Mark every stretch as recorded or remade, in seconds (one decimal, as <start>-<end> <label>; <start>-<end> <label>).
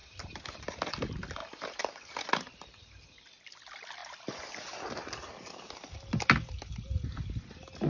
0.0-0.6 remade; 0.6-1.4 recorded; 1.4-3.4 remade; 3.4-7.9 recorded